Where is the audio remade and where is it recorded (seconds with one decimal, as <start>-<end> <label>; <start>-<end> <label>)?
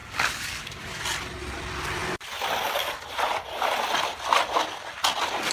0.0-1.0 remade; 1.0-5.5 recorded